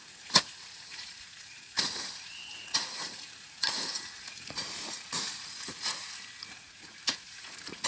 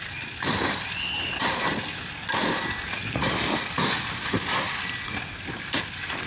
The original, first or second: second